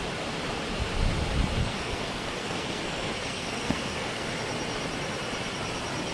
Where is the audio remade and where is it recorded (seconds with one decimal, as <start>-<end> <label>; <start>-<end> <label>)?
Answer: 0.0-1.6 recorded; 1.6-4.3 remade; 4.3-6.1 recorded